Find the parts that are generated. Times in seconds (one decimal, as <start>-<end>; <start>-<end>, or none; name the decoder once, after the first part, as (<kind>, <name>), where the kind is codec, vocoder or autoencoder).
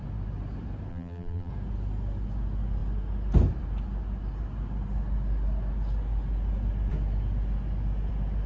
0.9-1.5 (vocoder, BigVGAN v2)